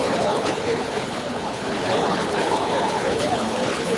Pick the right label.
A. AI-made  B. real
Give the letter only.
A